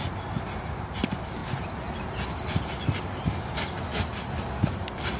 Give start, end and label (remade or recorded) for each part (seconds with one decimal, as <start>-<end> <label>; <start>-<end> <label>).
0.0-5.2 recorded